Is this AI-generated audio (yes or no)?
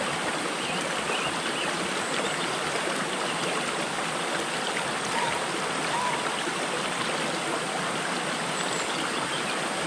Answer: no